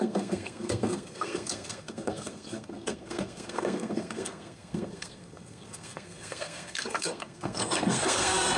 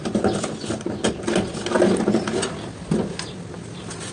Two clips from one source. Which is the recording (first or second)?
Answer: second